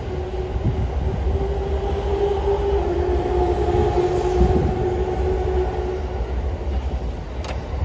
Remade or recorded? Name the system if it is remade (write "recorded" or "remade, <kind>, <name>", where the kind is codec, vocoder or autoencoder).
recorded